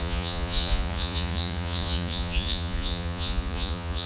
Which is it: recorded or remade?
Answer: remade